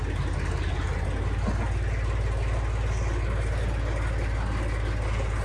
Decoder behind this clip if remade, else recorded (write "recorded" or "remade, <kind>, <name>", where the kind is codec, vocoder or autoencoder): recorded